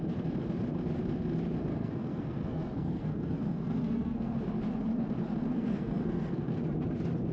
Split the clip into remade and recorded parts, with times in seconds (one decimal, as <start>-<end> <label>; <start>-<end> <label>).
0.0-1.7 recorded; 1.7-4.4 remade; 4.4-5.5 recorded; 5.5-6.6 remade; 6.6-7.3 recorded